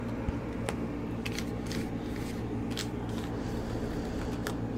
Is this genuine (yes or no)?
yes